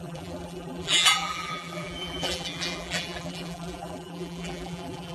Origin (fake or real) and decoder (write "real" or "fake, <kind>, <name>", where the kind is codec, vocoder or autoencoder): fake, vocoder, BigVGAN v2